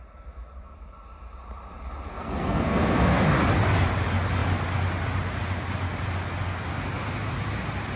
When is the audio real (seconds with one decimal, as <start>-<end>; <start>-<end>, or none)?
0.0-2.1; 3.3-8.0